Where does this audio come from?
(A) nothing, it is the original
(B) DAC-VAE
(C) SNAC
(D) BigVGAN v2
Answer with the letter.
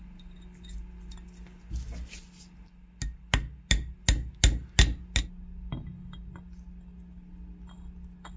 A